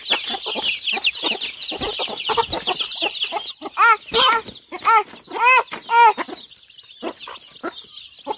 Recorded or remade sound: recorded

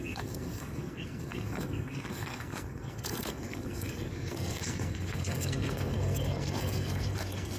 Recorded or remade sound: remade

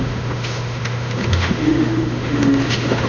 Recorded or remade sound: remade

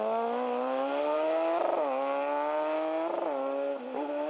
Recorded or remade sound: recorded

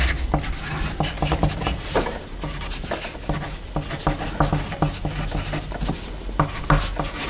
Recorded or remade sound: recorded